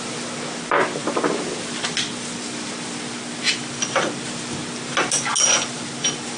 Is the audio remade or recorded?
recorded